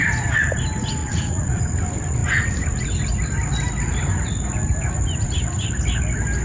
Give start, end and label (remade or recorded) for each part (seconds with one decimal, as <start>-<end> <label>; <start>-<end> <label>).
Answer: 0.0-1.0 recorded; 1.0-1.6 remade; 1.6-6.4 recorded